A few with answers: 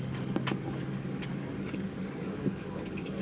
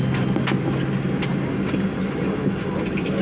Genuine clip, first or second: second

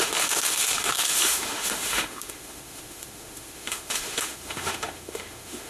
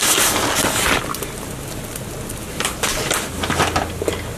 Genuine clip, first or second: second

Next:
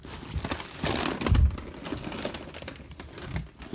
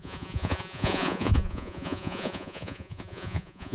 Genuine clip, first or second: first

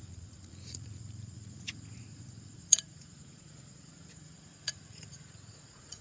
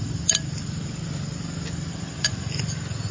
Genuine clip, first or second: second